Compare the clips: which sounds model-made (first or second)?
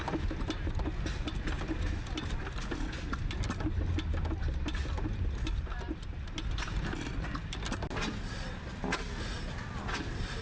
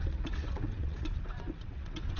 second